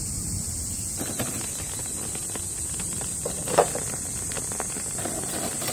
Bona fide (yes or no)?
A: yes